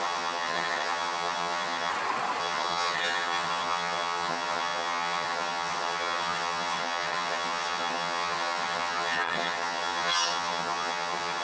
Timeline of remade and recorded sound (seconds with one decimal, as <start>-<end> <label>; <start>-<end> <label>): 0.0-1.9 remade; 1.9-2.4 recorded; 2.4-11.4 remade